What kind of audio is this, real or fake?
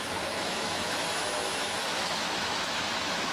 fake